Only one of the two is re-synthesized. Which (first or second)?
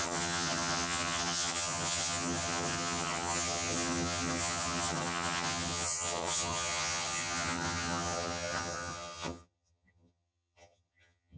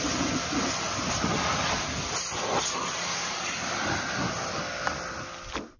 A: first